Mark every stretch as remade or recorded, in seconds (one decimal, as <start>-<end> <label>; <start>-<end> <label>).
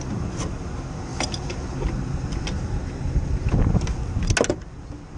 0.0-5.2 recorded